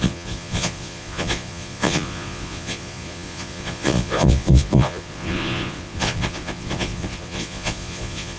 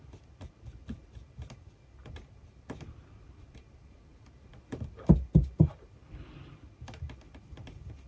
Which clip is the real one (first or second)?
second